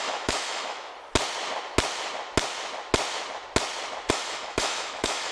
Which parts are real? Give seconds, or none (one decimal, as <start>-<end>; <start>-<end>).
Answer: 0.9-4.1